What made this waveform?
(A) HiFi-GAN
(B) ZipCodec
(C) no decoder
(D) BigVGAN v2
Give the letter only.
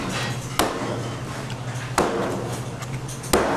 C